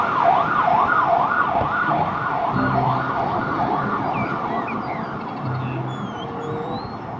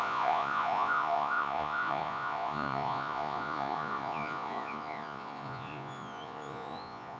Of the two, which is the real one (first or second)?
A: first